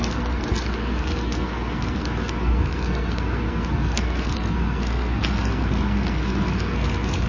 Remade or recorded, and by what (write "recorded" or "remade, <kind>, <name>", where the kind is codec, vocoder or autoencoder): remade, codec, SNAC